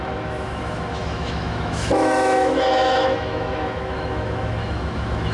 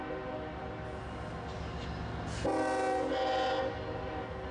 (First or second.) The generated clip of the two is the first